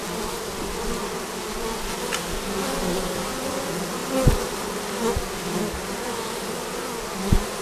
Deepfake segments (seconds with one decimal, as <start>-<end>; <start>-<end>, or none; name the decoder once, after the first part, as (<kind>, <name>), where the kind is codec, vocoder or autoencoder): none